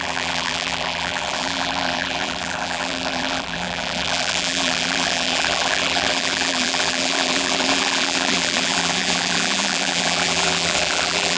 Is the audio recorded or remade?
remade